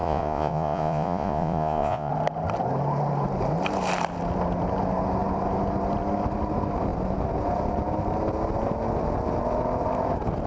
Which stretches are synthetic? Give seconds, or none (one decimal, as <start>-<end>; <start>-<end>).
0.0-2.1